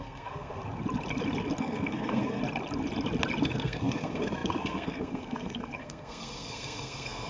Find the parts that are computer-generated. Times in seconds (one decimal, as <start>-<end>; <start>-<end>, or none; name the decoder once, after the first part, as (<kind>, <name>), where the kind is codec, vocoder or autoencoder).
0.0-0.6 (codec, SNAC); 1.6-2.4; 3.4-7.3